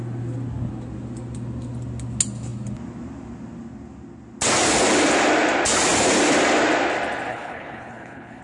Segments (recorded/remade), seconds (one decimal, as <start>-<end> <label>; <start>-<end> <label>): 0.0-7.3 recorded; 7.3-8.4 remade